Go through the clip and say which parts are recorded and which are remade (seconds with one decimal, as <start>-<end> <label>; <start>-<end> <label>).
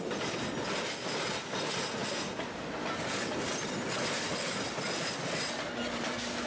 0.0-6.5 recorded